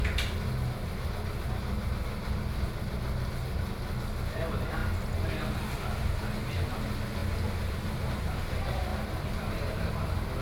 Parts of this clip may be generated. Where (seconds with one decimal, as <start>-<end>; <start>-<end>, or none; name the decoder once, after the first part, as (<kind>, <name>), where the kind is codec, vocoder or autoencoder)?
8.9-9.9 (vocoder, BigVGAN v2)